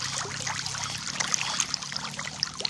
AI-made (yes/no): no